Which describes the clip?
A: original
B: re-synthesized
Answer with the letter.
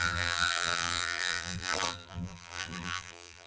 B